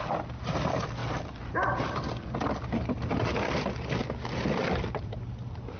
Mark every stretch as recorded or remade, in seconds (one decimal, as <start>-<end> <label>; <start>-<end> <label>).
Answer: 0.0-5.8 recorded